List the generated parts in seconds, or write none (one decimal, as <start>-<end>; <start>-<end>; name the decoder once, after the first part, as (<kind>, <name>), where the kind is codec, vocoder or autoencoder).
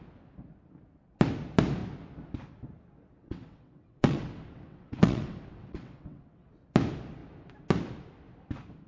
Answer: 3.2-6.5 (vocoder, WaveNeXt)